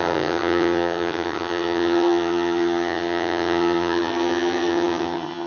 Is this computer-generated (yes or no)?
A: yes